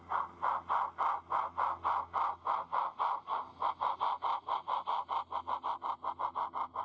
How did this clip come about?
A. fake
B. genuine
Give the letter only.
B